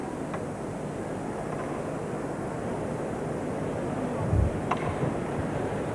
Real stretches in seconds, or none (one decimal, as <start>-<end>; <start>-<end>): 0.0-2.3